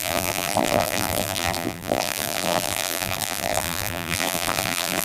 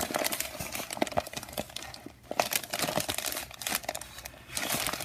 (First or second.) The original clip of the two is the second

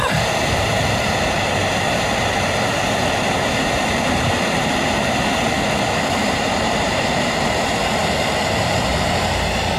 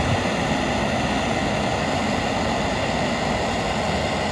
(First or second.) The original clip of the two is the second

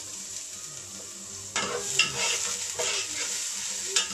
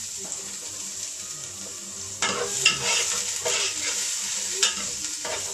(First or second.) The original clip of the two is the first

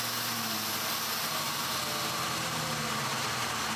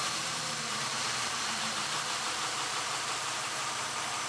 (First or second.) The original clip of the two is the first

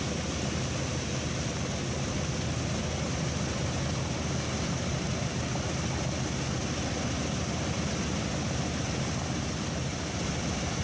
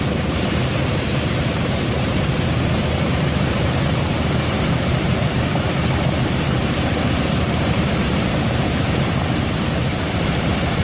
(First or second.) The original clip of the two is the first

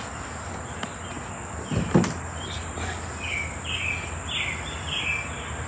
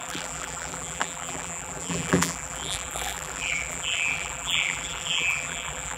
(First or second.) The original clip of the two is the first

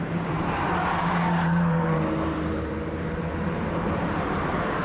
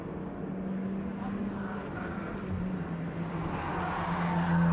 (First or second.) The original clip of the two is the second